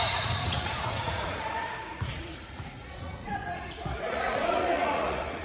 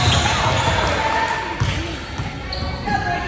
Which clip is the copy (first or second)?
first